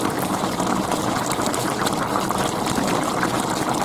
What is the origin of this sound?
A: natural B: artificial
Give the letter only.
B